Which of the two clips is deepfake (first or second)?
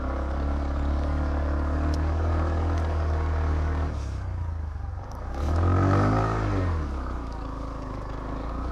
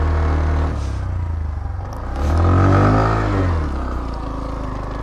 first